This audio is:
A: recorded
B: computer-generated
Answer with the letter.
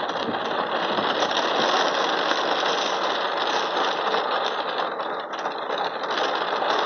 A